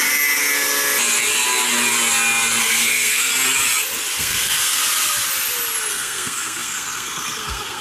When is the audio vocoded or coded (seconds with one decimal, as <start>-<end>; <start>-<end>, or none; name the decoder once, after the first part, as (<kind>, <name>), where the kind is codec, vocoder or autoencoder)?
2.6-3.3 (codec, SNAC); 4.2-4.8; 5.9-7.8